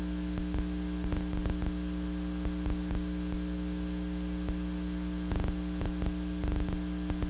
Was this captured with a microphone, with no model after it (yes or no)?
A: yes